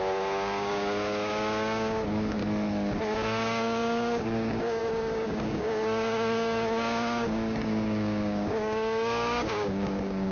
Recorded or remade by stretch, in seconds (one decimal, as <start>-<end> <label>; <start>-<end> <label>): 0.0-2.4 remade; 2.4-3.0 recorded; 3.0-10.3 remade